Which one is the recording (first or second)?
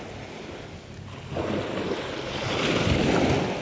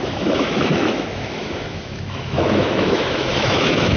first